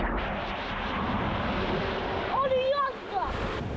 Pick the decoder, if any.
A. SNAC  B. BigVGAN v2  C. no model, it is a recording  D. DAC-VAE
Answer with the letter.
C